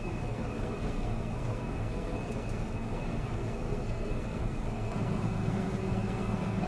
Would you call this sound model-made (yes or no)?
yes